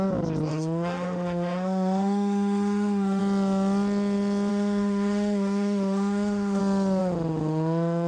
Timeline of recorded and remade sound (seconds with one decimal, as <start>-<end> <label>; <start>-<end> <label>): 0.0-0.5 recorded; 0.5-3.2 remade; 3.2-4.5 recorded; 4.5-6.6 remade; 6.6-7.0 recorded; 7.0-8.1 remade